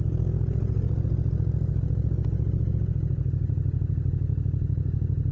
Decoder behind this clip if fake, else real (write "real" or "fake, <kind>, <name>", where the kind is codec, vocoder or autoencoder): real